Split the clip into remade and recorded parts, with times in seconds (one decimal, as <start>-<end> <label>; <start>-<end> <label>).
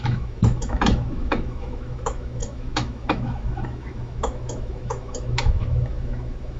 0.0-6.6 remade